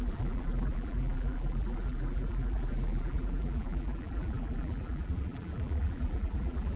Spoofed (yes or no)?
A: yes